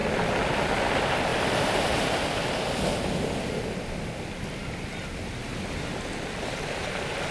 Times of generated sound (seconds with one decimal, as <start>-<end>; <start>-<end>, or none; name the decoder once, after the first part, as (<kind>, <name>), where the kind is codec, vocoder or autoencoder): none